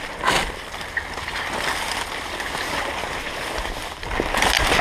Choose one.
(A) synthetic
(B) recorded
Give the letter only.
B